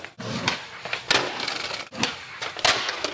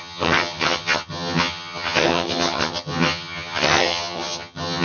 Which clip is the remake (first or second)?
second